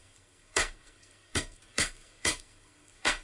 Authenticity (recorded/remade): remade